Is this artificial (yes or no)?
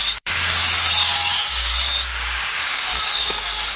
yes